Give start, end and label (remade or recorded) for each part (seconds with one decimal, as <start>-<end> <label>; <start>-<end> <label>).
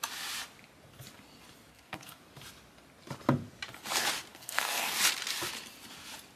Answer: 0.0-1.7 recorded; 1.7-2.2 remade; 2.2-4.3 recorded; 4.3-4.9 remade; 4.9-6.4 recorded